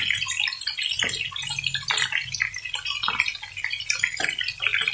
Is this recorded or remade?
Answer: recorded